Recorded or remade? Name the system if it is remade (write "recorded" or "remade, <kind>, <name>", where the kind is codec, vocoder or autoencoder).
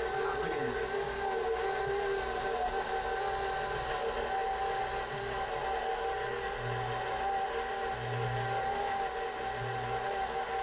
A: recorded